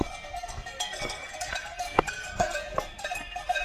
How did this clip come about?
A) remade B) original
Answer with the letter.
A